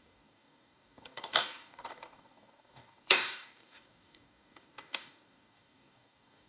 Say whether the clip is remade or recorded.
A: remade